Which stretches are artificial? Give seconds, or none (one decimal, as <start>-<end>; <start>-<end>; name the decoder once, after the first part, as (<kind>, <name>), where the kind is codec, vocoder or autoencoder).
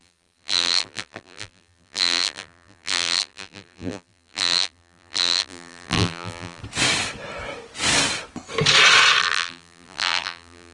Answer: 0.0-6.6 (vocoder, BigVGAN v2); 9.2-10.7